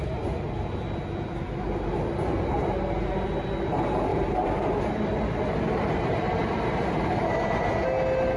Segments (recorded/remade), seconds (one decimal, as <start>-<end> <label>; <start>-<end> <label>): 0.0-4.1 recorded; 4.1-6.9 remade; 6.9-8.4 recorded